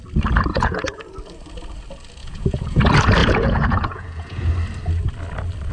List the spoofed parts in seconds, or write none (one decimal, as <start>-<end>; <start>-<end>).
0.5-1.1; 2.2-2.8; 3.2-4.5